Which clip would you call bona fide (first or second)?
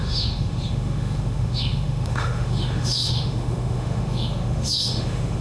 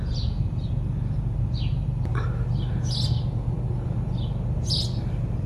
second